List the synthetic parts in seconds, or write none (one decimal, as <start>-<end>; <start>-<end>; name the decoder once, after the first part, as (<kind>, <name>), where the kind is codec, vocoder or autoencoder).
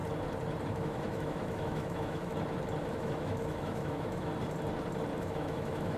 0.7-2.3 (autoencoder, DAC-VAE); 2.9-4.3; 5.2-6.0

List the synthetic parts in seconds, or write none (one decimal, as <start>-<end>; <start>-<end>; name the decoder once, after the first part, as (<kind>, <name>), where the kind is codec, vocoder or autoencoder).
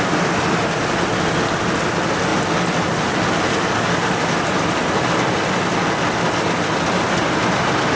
none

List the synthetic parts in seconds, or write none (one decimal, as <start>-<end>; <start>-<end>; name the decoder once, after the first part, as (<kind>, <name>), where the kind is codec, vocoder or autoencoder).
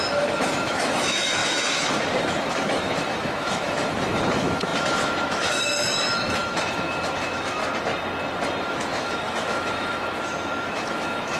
0.0-7.6 (autoencoder, DAC-VAE); 8.6-11.4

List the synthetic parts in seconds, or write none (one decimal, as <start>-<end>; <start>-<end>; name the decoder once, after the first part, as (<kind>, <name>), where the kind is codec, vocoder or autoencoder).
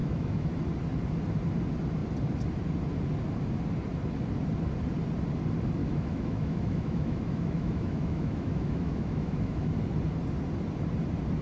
0.0-0.5 (autoencoder, DAC-VAE); 5.8-9.7